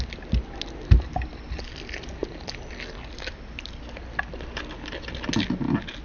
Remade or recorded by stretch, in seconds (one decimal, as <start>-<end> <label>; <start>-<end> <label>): 0.0-6.0 recorded